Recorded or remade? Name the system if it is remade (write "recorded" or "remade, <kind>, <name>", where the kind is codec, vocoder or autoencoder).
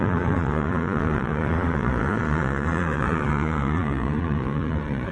remade, vocoder, Vocos